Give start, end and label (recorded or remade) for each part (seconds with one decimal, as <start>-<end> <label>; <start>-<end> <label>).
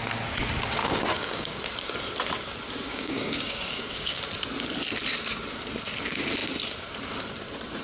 0.0-0.8 recorded; 0.8-1.6 remade; 1.6-2.9 recorded; 2.9-4.2 remade; 4.2-7.8 recorded